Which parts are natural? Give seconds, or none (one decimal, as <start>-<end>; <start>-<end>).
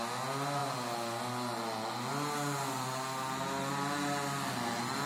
0.0-5.1